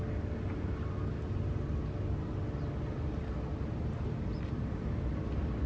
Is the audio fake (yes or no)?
no